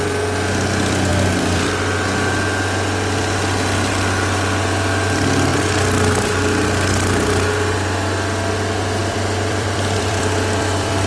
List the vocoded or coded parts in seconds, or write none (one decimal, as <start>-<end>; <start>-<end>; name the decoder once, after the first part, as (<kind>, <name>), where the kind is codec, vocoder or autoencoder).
9.0-11.1 (vocoder, BigVGAN v2)